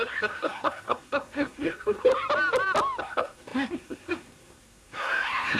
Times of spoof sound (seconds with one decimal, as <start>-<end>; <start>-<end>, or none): 0.0-2.1; 3.0-5.6